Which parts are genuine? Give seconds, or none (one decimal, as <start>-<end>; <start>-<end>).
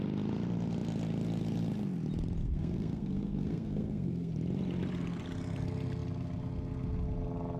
0.0-2.4; 4.3-7.6